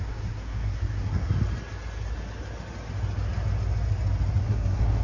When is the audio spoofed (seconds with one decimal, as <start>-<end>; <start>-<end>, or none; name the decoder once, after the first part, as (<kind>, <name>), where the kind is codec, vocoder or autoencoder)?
0.0-1.4 (codec, SNAC); 4.4-5.0